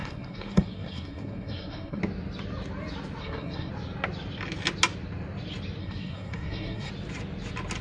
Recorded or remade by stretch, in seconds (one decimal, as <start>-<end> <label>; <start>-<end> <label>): 0.0-2.0 remade; 2.0-3.2 recorded; 3.2-3.7 remade; 3.7-5.8 recorded; 5.8-6.9 remade; 6.9-7.8 recorded